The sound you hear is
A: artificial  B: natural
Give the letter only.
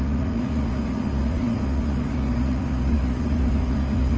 A